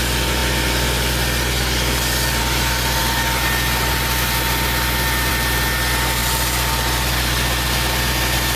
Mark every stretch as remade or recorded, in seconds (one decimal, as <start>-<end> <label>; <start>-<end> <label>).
0.0-8.6 recorded